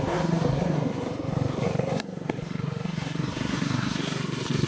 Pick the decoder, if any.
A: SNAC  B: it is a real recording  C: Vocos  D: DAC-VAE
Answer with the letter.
A